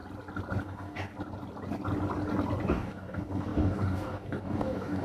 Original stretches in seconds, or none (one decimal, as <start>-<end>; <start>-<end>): 0.0-0.6; 1.1-2.7